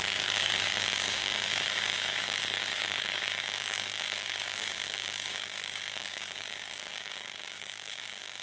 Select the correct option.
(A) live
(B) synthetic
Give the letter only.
B